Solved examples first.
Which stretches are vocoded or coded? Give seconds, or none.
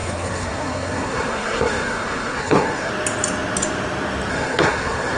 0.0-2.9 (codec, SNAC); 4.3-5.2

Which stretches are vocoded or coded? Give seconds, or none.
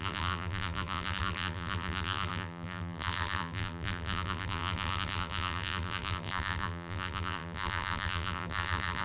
0.0-9.0 (vocoder, BigVGAN v2)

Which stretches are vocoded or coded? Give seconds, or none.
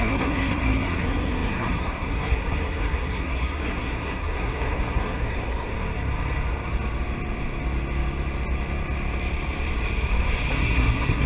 0.0-5.7 (codec, SNAC); 10.6-11.3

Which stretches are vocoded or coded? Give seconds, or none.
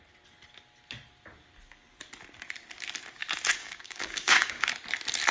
3.6-4.7 (codec, DAC)